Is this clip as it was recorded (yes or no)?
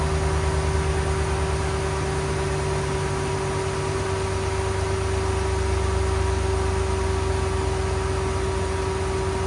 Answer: yes